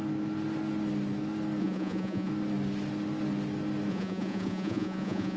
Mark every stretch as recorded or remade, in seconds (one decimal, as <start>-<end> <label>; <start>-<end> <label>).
0.0-1.6 recorded; 1.6-2.3 remade; 2.3-3.9 recorded; 3.9-5.4 remade